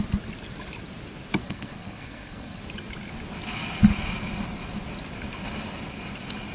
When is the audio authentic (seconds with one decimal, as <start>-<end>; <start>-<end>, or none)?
0.0-1.4; 2.6-6.5